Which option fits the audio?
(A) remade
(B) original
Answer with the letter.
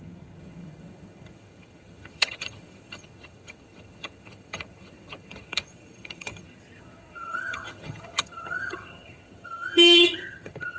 A